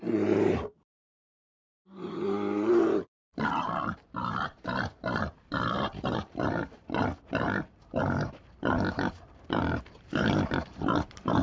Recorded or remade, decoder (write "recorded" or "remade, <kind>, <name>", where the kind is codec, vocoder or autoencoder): remade, vocoder, BigVGAN v2